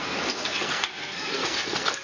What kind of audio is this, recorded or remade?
remade